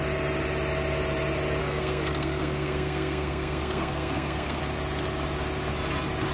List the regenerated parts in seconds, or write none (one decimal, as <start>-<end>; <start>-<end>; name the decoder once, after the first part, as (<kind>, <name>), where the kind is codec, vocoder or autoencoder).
1.6-4.6 (codec, SNAC)